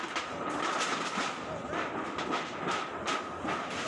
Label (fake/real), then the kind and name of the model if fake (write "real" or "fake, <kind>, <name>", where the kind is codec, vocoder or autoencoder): real